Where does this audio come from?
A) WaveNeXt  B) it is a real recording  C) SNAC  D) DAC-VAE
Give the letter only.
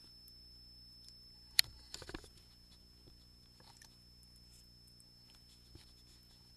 B